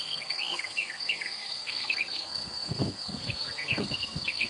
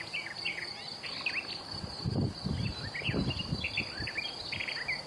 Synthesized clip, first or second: first